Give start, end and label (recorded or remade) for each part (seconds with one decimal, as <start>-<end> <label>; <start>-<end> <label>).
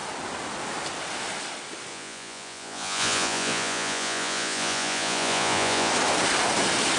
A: 0.0-1.9 recorded; 1.9-5.9 remade; 5.9-7.0 recorded